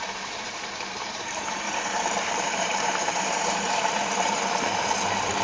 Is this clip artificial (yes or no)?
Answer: yes